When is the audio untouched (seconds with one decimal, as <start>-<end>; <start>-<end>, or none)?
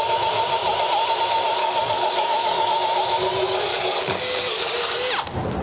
0.0-1.6; 2.7-3.7; 4.2-5.6